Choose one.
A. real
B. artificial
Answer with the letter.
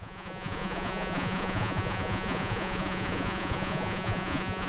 B